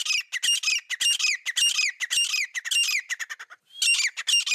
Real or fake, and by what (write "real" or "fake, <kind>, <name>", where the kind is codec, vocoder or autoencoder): real